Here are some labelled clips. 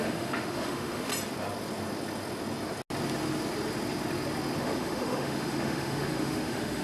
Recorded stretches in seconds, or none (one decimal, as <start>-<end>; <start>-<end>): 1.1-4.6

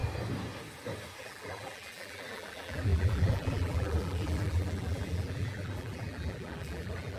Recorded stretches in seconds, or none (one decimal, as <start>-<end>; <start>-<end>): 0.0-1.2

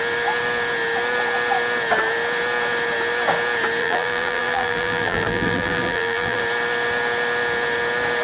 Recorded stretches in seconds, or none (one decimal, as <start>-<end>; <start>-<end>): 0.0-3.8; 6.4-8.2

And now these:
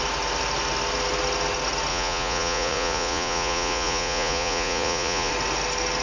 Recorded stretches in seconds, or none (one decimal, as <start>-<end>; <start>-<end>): 0.0-1.9; 5.3-6.0

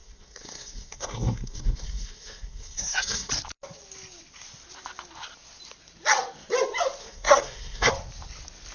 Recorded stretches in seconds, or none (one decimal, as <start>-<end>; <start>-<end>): 3.3-7.0; 7.9-8.7

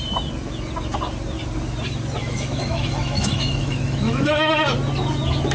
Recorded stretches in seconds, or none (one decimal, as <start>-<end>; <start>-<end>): 0.0-2.2; 4.5-5.5